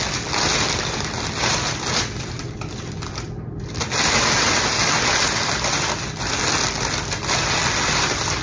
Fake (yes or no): no